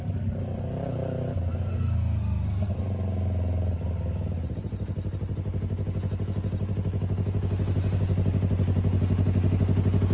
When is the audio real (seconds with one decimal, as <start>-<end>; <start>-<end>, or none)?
0.0-1.7; 2.8-10.1